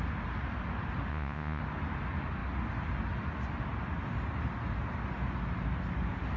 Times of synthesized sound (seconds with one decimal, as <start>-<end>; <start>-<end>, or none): 1.1-1.6

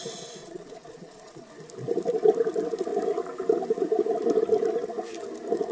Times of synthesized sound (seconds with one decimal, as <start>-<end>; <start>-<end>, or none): 0.4-1.5